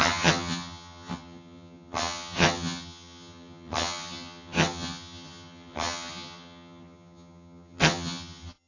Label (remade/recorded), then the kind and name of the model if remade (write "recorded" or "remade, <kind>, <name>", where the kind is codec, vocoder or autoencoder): remade, vocoder, HiFi-GAN